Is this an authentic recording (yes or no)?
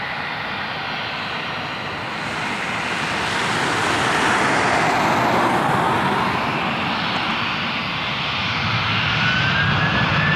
yes